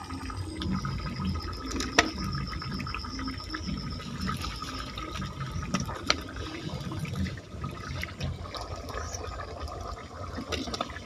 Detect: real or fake real